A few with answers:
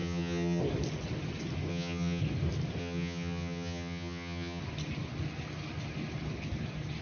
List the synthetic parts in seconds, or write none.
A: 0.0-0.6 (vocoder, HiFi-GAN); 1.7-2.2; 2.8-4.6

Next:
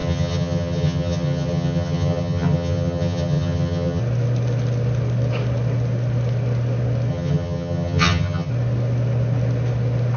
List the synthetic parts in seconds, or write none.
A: 0.0-4.0 (vocoder, HiFi-GAN); 7.1-8.5

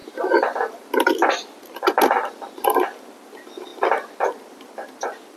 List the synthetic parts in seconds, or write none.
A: none